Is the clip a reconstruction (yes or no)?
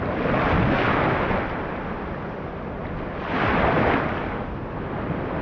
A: no